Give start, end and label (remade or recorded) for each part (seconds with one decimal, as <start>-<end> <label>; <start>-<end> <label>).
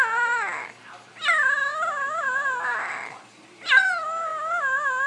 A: 0.0-4.3 remade; 4.3-5.1 recorded